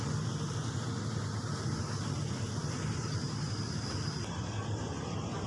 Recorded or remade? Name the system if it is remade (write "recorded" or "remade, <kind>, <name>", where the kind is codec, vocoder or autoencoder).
recorded